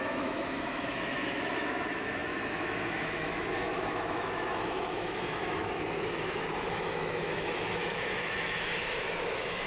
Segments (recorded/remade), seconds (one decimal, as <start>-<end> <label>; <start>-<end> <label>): 0.0-9.7 remade